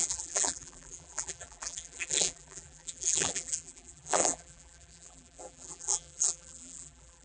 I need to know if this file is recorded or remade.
remade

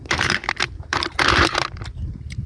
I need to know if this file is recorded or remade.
remade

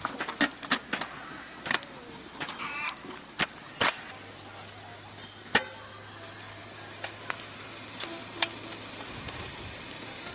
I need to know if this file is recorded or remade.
recorded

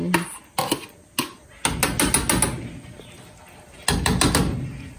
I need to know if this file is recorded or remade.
recorded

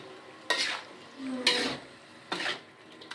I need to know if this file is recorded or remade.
recorded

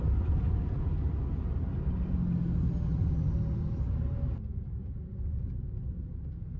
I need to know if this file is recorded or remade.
recorded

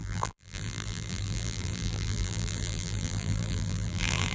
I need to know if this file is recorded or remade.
remade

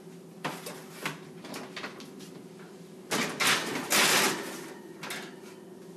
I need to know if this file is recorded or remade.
recorded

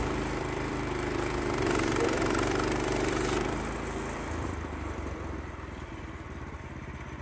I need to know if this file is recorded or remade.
remade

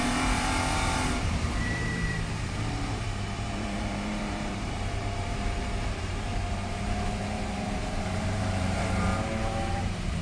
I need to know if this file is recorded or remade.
remade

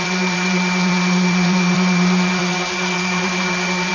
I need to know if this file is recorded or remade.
remade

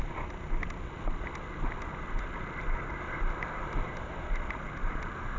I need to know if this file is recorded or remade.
recorded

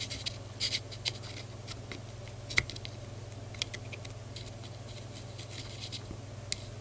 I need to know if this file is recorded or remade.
recorded